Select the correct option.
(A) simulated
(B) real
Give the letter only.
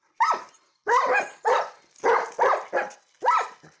B